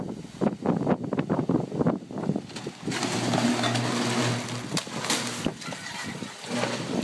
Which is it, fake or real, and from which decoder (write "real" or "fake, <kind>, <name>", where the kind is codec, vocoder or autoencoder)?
real